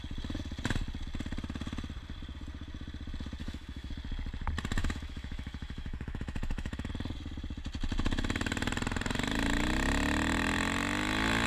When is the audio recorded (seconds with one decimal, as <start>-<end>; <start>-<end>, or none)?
0.0-3.4; 3.9-4.8; 6.9-11.5